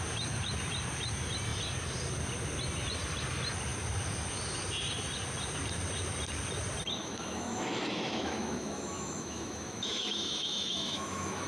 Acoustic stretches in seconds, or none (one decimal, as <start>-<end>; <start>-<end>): 0.0-7.0